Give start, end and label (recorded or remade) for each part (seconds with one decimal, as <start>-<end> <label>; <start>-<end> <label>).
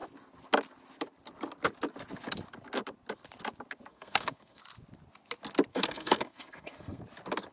0.0-3.9 recorded; 3.9-4.6 remade; 4.6-5.7 recorded; 5.7-7.0 remade; 7.0-7.5 recorded